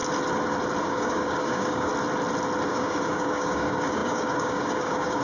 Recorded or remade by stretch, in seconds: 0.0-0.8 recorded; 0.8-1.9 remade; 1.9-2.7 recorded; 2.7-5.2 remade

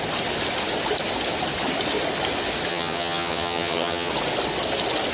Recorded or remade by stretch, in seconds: 0.0-2.7 recorded; 2.7-4.1 remade; 4.1-5.1 recorded

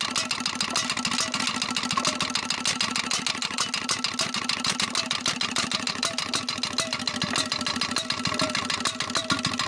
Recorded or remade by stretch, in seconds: 0.0-9.7 recorded

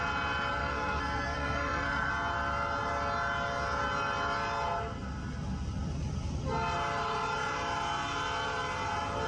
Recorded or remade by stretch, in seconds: 0.0-0.6 recorded; 0.6-2.1 remade; 2.1-9.3 recorded